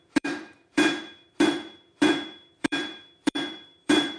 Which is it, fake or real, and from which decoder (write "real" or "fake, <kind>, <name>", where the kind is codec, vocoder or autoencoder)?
fake, vocoder, BigVGAN v2